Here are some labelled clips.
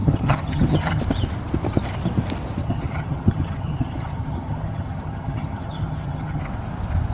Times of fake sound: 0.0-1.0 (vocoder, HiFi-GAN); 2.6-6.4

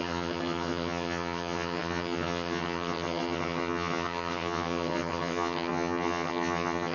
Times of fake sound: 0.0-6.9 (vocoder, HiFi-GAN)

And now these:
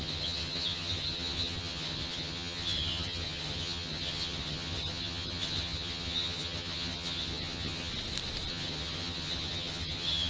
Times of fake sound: 0.0-7.9 (vocoder, HiFi-GAN); 8.5-10.3

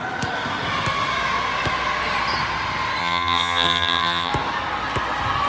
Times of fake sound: 3.0-4.3 (vocoder, HiFi-GAN)

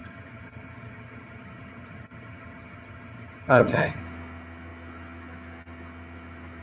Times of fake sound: 0.0-4.0 (vocoder, HiFi-GAN)